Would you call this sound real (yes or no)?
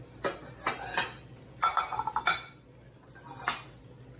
yes